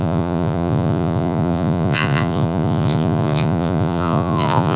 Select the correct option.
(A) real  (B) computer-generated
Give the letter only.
B